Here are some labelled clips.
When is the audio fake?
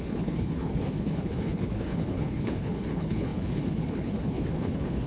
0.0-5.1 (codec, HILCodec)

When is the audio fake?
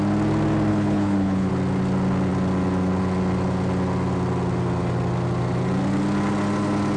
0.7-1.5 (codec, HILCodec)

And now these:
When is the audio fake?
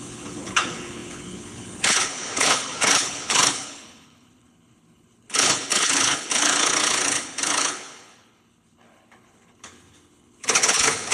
0.0-11.1 (codec, HILCodec)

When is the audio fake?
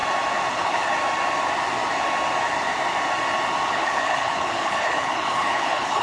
0.5-0.9 (codec, HILCodec); 3.7-6.0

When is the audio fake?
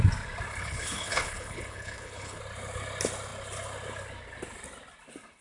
0.6-2.4 (codec, HILCodec)